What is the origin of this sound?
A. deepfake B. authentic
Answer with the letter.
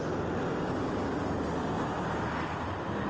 B